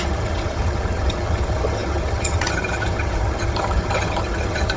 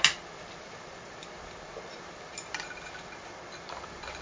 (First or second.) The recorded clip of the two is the second